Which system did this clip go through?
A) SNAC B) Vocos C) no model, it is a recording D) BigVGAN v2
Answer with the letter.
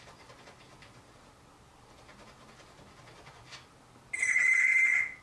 C